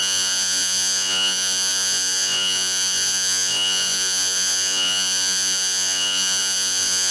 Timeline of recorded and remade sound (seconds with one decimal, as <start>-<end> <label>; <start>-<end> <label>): 0.0-7.1 remade